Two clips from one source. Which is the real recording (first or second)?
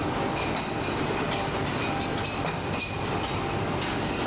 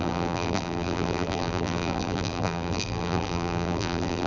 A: first